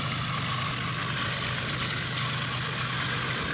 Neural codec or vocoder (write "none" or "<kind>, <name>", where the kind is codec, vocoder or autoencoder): none